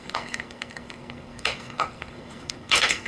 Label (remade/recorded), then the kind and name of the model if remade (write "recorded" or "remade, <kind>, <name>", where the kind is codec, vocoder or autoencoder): remade, codec, SNAC